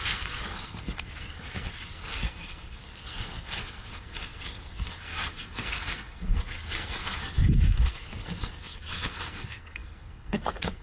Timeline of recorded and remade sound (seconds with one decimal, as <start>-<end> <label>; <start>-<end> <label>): 0.0-10.8 remade